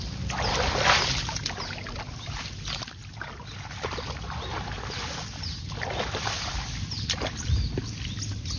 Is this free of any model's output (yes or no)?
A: yes